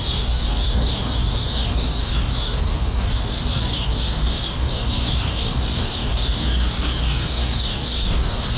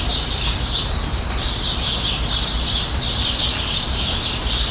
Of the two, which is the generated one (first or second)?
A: first